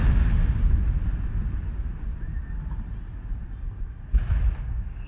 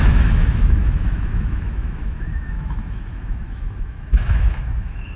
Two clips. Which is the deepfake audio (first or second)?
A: second